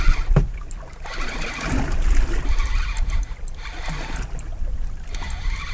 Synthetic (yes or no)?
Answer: no